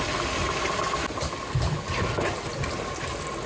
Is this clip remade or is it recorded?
recorded